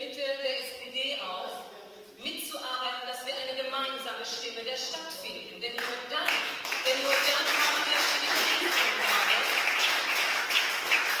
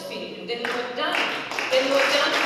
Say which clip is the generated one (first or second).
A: first